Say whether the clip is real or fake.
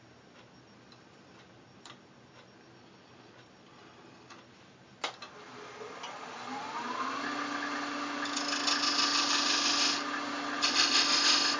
real